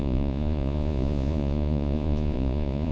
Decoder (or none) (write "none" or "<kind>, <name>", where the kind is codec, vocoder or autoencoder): vocoder, Vocos